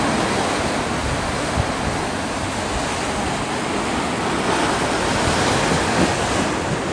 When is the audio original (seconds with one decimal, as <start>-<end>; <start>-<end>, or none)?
0.0-6.9